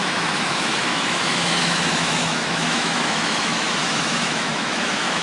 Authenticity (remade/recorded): remade